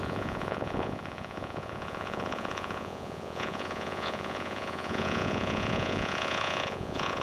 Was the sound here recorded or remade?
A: remade